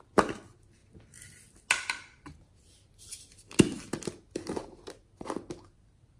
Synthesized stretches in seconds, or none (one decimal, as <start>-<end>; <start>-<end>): none